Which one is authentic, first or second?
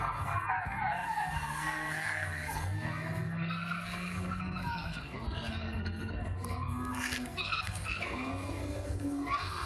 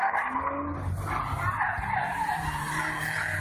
second